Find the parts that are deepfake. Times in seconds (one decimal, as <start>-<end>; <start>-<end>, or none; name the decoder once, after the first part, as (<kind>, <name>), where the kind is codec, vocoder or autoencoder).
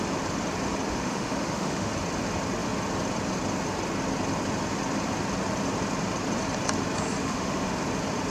0.9-1.9 (autoencoder, DAC-VAE); 7.2-7.7